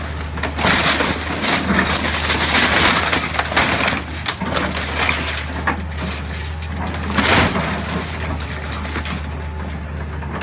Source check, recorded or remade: recorded